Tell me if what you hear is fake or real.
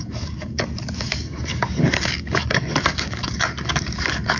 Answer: fake